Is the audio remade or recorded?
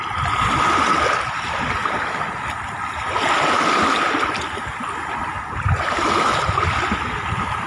recorded